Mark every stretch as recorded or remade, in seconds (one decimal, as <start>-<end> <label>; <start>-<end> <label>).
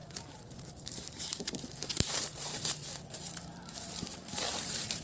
0.0-5.0 remade